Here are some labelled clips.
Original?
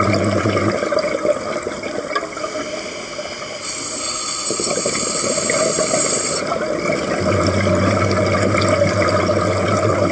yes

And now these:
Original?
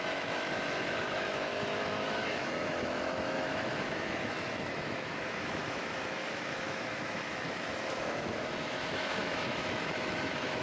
no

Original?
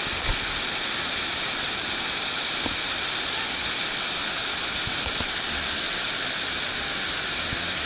yes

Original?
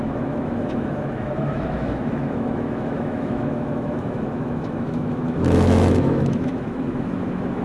no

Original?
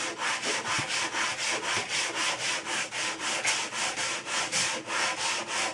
yes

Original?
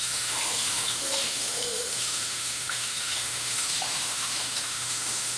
no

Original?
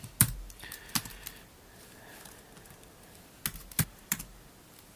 yes